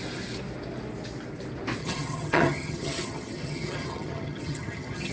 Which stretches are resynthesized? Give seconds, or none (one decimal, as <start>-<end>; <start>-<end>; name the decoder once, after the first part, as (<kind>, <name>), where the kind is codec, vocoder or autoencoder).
1.8-5.1 (vocoder, HiFi-GAN)